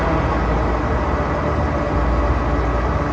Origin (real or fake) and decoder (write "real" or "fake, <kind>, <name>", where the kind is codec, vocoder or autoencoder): real